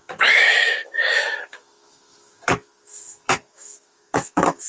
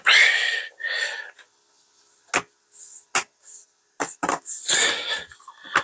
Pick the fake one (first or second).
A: first